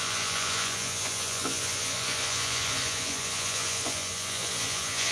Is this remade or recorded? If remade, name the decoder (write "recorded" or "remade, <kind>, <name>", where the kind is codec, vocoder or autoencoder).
remade, vocoder, Vocos